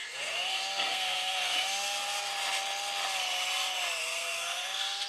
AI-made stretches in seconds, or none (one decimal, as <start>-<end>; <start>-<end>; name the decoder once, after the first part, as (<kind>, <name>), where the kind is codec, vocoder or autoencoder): 0.0-2.3 (codec, SNAC); 4.0-5.1